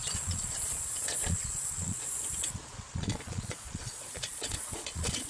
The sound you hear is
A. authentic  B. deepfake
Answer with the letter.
B